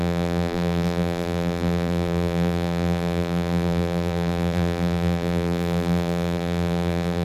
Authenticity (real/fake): fake